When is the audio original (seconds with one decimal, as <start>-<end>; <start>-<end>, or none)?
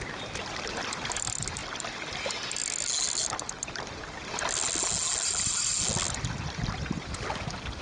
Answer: 0.0-7.8